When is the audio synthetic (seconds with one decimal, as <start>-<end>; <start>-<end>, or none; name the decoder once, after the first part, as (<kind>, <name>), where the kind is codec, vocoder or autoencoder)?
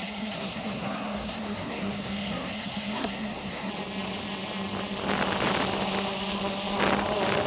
0.0-3.7 (codec, SNAC)